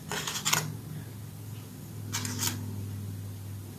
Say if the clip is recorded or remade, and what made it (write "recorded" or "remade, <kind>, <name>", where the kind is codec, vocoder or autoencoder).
recorded